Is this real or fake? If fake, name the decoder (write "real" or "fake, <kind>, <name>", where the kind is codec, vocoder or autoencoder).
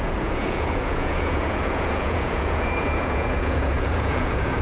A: fake, vocoder, Vocos